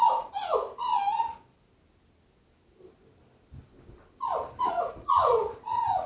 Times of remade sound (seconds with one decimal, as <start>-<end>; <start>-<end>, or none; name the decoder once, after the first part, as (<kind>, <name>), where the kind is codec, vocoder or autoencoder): 0.0-0.9 (vocoder, Vocos); 4.6-6.1

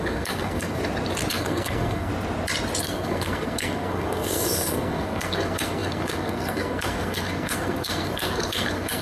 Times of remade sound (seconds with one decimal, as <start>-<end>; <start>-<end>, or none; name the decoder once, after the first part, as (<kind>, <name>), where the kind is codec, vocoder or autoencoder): 0.0-0.8 (codec, SNAC); 1.3-2.1; 2.8-9.0

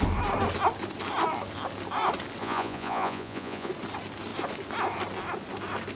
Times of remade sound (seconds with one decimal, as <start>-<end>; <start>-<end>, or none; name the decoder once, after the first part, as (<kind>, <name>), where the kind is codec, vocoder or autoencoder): 2.4-3.7 (vocoder, Vocos)

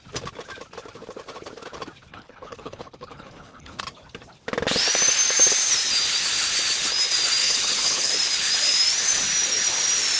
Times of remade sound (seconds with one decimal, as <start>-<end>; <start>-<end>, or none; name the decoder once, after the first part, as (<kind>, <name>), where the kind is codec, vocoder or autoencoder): 2.1-3.8 (codec, HILCodec); 7.4-8.1